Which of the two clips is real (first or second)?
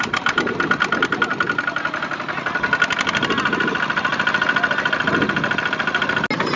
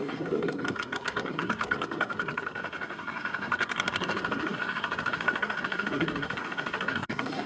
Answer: first